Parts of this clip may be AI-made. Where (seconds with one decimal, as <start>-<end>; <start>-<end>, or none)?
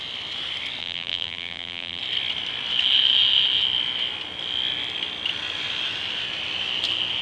0.8-2.0